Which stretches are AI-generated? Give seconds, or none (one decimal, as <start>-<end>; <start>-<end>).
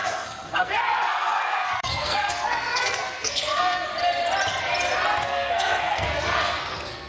0.0-3.9; 5.2-7.1